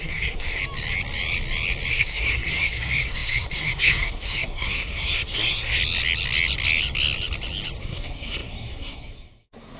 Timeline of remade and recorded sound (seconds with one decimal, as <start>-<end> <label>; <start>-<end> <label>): 0.0-0.6 remade; 0.6-1.9 recorded; 1.9-5.8 remade; 5.8-7.8 recorded; 7.8-9.8 remade